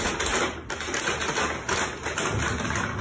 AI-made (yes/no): no